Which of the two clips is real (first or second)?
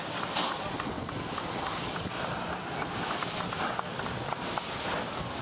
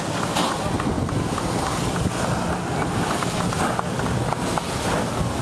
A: second